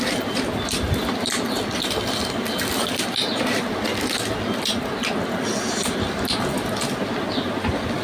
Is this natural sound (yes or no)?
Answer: yes